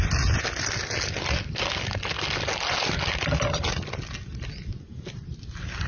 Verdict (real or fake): real